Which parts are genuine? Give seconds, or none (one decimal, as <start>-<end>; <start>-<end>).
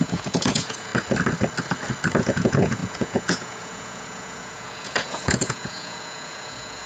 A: 0.9-2.2